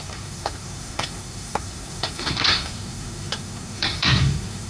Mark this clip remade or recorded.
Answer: remade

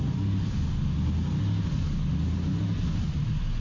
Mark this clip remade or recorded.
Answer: recorded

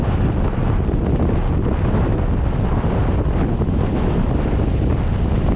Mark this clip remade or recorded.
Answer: recorded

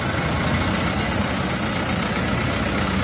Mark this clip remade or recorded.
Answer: recorded